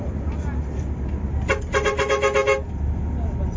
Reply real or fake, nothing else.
real